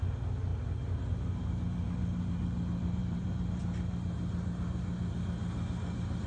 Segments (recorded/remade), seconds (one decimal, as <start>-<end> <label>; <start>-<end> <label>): 0.0-3.0 recorded; 3.0-3.6 remade; 3.6-6.3 recorded